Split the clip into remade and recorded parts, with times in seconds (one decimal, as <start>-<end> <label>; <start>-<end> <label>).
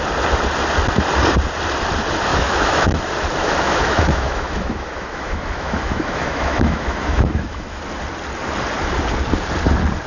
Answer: 0.0-2.3 recorded; 2.3-3.0 remade; 3.0-3.4 recorded; 3.4-7.8 remade; 7.8-10.1 recorded